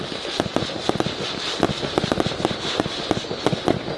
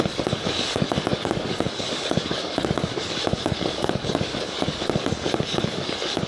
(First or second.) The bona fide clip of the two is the first